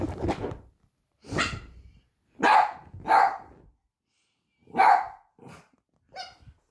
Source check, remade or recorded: recorded